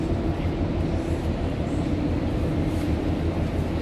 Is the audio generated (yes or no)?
yes